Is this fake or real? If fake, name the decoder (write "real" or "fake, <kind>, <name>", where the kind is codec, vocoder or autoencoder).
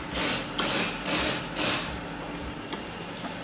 real